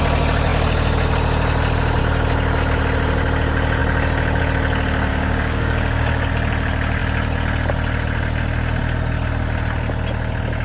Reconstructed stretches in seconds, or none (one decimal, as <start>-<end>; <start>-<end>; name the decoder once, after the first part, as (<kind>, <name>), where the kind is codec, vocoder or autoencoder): 5.1-6.3 (codec, DAC)